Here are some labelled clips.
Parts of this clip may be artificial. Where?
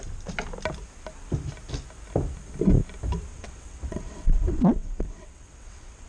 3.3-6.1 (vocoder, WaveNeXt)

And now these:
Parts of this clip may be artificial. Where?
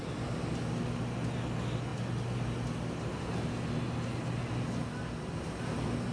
none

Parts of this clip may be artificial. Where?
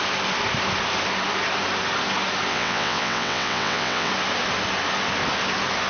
2.5-4.1 (vocoder, WaveNeXt)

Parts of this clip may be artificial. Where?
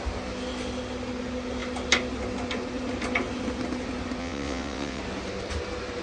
4.2-5.0 (vocoder, WaveNeXt)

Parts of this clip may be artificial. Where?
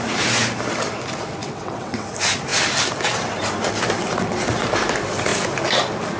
1.4-2.1 (vocoder, WaveNeXt)